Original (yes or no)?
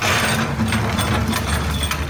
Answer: yes